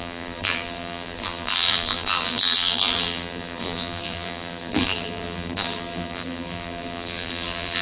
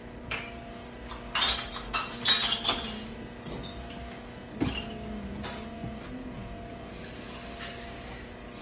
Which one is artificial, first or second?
first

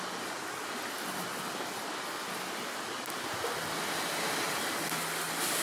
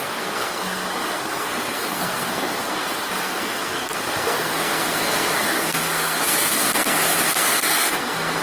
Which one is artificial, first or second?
second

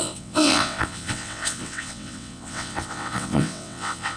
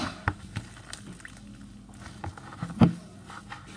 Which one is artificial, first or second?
first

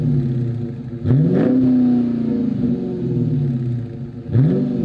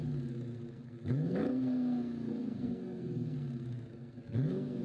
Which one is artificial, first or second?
second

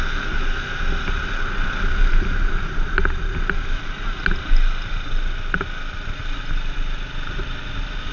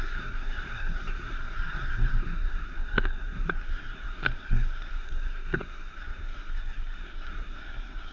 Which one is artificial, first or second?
second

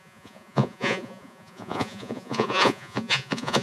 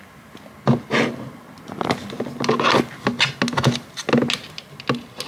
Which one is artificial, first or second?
first